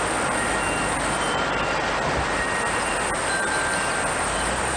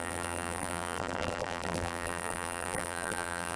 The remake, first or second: second